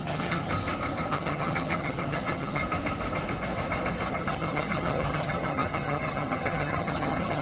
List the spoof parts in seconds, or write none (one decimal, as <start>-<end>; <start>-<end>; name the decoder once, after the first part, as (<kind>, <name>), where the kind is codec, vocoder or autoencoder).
0.0-0.5 (vocoder, HiFi-GAN); 1.1-2.6; 4.1-7.4